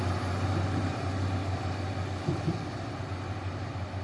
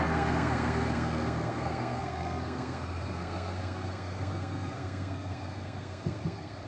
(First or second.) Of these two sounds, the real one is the first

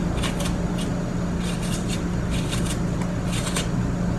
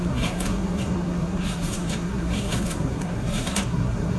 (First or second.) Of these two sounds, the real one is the first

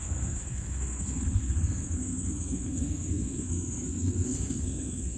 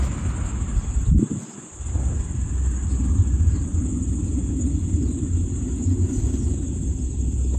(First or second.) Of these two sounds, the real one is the second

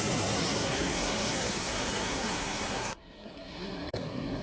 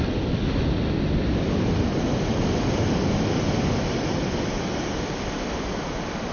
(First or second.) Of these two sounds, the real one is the second